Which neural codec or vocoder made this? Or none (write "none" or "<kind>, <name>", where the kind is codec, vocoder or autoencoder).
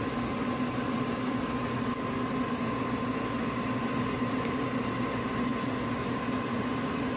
none